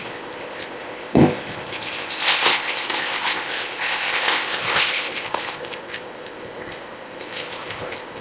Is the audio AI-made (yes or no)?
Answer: yes